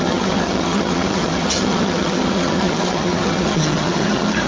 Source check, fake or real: fake